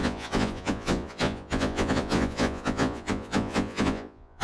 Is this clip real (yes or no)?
no